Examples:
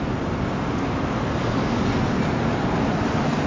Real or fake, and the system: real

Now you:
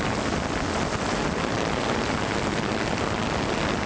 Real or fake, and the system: real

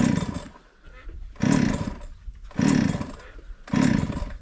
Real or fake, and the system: real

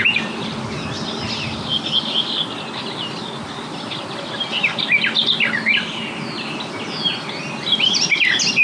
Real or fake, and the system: real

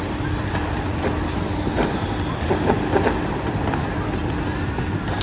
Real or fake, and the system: real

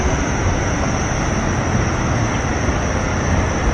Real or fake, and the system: real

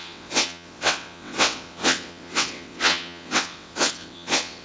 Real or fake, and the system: fake, vocoder, WaveNeXt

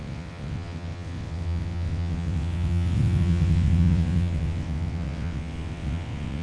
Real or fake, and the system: fake, vocoder, WaveNeXt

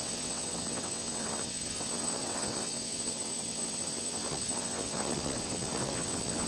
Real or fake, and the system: fake, vocoder, WaveNeXt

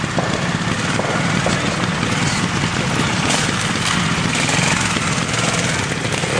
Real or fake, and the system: real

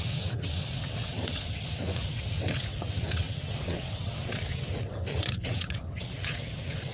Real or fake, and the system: fake, vocoder, WaveNeXt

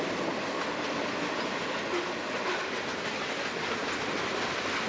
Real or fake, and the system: real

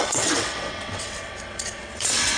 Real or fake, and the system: fake, vocoder, WaveNeXt